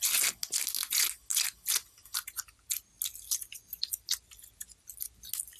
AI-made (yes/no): no